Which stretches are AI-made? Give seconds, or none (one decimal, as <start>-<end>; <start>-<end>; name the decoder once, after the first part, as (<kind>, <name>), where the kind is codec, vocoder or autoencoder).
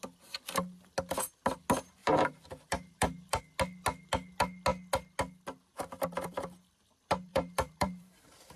2.0-3.4 (vocoder, BigVGAN v2); 7.3-8.6